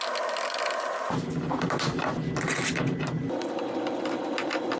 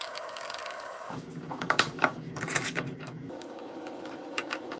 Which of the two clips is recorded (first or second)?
first